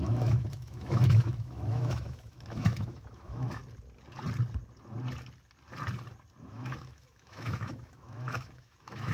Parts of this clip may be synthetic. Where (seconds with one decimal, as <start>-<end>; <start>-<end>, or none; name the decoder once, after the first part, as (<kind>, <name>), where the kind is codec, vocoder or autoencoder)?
0.0-3.6 (autoencoder, DAC-VAE); 6.4-9.1

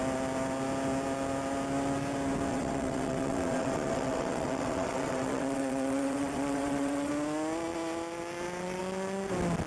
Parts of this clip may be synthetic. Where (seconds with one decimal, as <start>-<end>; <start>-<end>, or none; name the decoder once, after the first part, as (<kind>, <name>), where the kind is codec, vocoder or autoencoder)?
2.5-7.1 (vocoder, WaveNeXt)

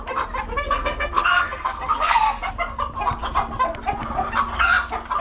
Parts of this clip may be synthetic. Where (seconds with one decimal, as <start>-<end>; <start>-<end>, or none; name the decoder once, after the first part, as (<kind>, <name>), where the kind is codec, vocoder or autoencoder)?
0.5-2.5 (codec, SNAC)

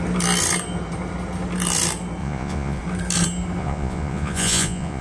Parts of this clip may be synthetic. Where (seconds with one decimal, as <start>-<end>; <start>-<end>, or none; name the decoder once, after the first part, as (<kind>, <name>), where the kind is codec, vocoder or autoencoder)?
2.2-2.8 (vocoder, Vocos); 3.6-5.0

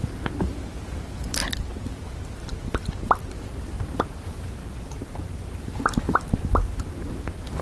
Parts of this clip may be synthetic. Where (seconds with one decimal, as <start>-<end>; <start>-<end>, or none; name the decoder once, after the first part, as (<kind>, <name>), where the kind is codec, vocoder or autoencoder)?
none